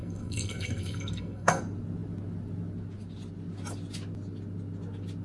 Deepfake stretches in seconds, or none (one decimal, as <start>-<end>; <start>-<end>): 0.0-1.6